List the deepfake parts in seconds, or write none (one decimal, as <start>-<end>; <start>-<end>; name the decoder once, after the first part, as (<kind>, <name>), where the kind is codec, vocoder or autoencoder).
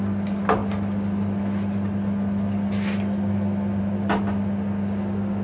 none